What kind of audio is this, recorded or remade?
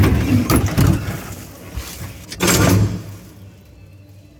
recorded